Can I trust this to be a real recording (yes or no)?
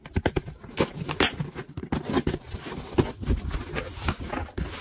yes